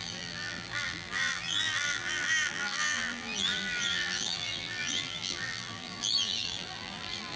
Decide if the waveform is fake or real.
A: fake